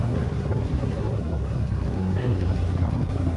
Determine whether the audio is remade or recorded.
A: remade